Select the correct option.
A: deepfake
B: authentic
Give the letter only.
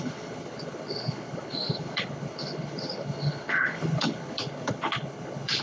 A